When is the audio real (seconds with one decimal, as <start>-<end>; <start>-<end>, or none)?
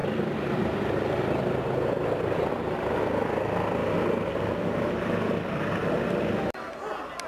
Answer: 0.0-3.8; 5.3-7.3